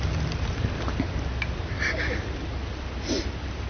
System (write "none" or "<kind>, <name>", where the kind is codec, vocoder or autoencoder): none